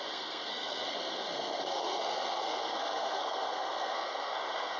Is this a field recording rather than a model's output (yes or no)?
no